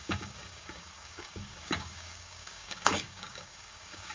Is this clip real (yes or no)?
no